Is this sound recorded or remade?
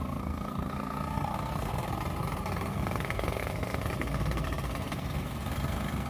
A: remade